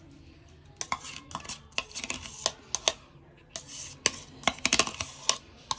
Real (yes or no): yes